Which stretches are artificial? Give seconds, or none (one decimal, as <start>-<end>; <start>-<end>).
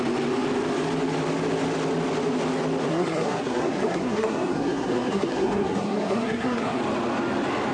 2.9-6.8